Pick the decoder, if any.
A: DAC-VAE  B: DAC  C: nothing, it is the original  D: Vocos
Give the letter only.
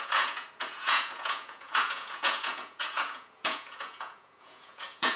D